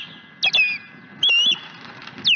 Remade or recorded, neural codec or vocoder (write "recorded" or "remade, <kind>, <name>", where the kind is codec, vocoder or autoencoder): recorded